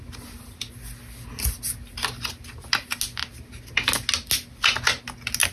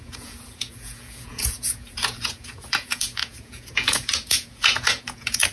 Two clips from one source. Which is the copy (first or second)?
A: second